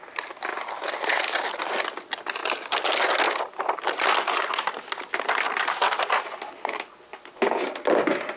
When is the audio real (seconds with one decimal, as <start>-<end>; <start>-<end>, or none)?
0.0-8.4